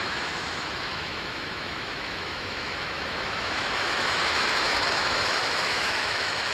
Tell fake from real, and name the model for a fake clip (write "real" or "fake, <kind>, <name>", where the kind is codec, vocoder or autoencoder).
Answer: fake, autoencoder, DAC-VAE